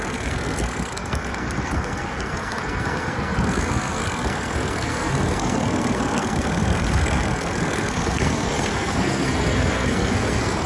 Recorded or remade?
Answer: remade